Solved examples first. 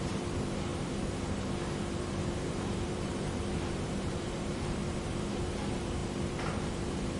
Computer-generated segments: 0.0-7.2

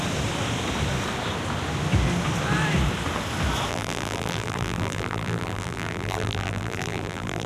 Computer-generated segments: 3.7-7.5

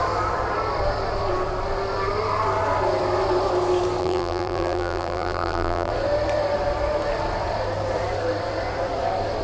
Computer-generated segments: 4.0-5.9

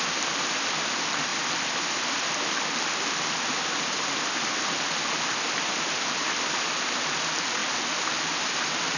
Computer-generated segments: 0.0-1.3; 6.2-7.6; 8.5-9.0

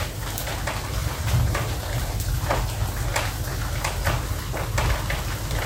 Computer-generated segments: 1.0-2.1

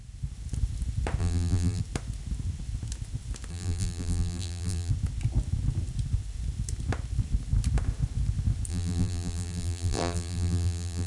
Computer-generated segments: 1.2-1.8; 3.5-4.9; 8.7-11.1

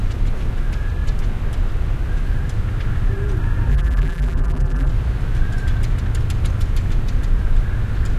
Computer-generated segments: 3.7-4.9